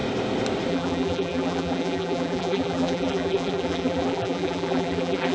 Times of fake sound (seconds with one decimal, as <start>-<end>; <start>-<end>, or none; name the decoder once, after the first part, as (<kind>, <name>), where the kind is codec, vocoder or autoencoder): 0.7-5.3 (vocoder, BigVGAN v2)